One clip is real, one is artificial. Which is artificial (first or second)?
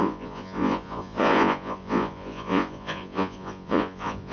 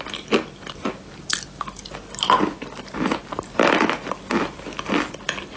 first